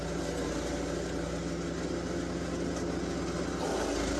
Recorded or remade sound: recorded